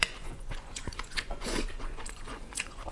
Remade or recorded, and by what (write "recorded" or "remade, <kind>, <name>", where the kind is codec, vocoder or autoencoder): remade, vocoder, Vocos